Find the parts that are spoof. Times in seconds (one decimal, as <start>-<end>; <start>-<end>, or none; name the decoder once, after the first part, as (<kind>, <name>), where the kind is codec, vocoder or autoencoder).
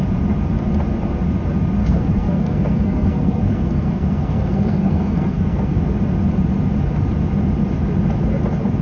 1.8-5.8 (codec, SNAC)